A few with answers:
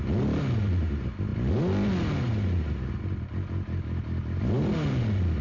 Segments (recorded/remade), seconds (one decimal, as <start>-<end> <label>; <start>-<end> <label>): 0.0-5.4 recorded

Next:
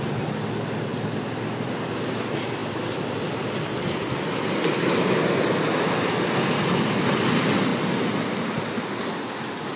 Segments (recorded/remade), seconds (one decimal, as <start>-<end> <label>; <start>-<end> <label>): 0.0-9.8 recorded

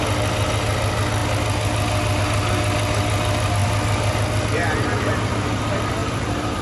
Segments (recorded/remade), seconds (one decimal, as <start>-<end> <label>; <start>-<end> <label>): 0.0-6.0 recorded; 6.0-6.6 remade

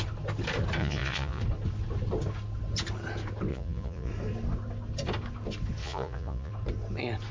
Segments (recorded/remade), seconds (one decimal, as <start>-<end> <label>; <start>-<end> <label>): 0.0-0.8 recorded; 0.8-1.4 remade; 1.4-3.5 recorded; 3.5-4.1 remade; 4.1-5.8 recorded; 5.8-6.5 remade; 6.5-7.3 recorded

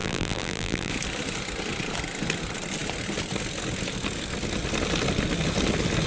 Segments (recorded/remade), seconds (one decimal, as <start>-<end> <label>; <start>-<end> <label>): 0.0-0.9 remade; 0.9-6.1 recorded

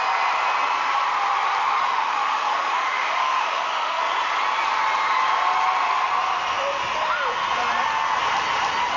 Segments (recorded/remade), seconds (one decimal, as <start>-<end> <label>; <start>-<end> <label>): 0.0-1.6 recorded; 1.6-4.0 remade; 4.0-9.0 recorded

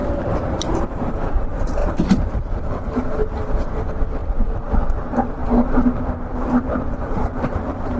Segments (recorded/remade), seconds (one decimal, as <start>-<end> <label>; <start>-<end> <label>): 0.0-8.0 remade